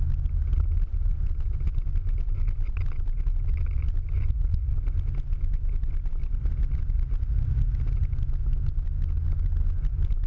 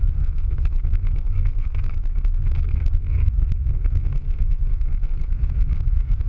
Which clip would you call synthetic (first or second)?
second